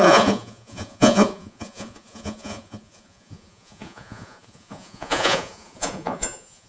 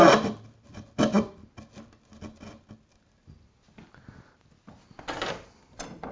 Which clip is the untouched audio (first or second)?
second